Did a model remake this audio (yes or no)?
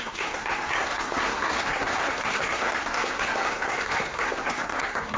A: yes